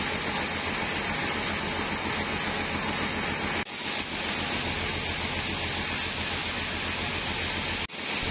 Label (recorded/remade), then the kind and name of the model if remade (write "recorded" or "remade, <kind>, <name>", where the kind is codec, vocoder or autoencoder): recorded